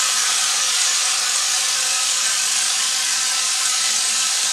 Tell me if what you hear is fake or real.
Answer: fake